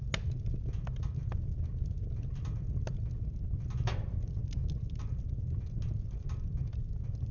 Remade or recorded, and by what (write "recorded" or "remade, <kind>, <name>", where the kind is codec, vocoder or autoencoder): recorded